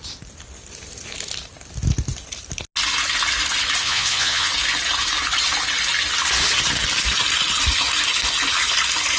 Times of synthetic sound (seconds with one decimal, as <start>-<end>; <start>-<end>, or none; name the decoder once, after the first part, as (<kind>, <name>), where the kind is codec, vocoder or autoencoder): 3.8-4.5 (vocoder, Vocos)